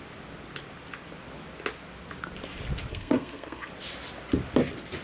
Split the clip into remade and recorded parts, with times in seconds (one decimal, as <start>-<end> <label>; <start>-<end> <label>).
0.0-2.9 recorded; 2.9-3.7 remade; 3.7-5.0 recorded